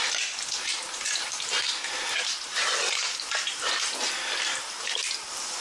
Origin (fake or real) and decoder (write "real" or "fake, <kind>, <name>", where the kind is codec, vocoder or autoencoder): real